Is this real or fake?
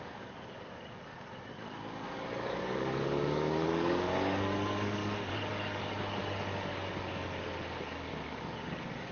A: fake